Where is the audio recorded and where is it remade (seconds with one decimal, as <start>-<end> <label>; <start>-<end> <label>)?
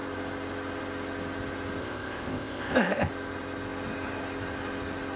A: 0.0-1.8 recorded; 1.8-3.1 remade; 3.1-5.2 recorded